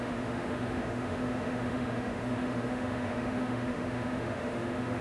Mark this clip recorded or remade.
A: remade